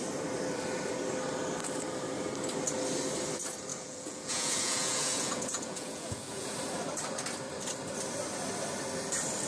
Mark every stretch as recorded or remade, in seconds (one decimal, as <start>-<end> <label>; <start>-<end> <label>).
0.0-3.7 recorded; 3.7-6.5 remade; 6.5-9.5 recorded